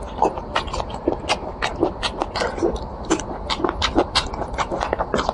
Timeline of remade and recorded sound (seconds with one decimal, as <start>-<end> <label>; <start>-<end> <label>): 0.0-5.3 remade